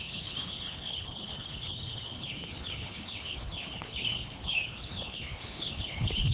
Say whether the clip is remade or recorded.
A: remade